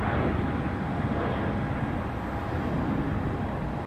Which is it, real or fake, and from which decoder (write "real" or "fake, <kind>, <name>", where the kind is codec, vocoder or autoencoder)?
real